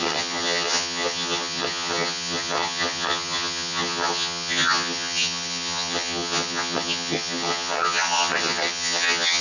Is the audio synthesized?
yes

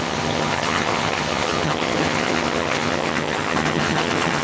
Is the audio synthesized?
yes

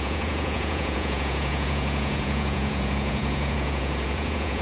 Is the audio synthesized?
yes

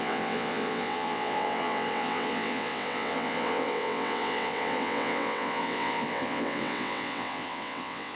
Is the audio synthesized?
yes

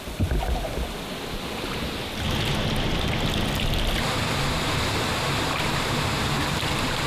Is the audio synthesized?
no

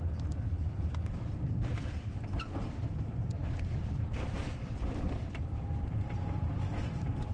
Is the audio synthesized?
yes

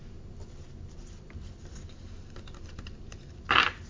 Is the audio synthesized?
no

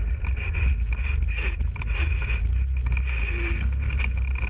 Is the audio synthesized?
no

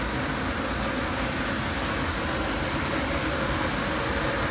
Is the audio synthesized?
no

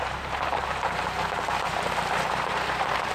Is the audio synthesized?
yes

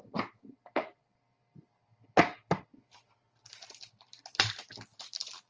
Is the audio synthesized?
no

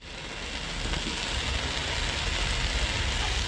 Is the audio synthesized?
no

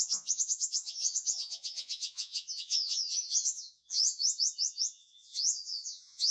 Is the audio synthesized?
yes